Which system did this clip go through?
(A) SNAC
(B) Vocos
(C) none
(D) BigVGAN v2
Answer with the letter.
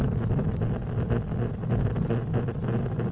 C